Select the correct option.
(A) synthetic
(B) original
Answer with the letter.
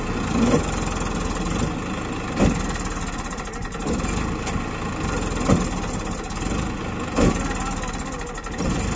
B